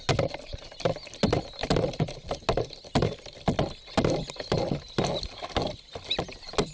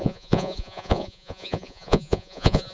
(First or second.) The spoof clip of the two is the second